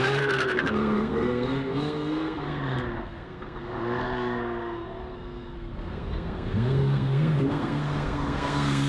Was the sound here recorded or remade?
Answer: remade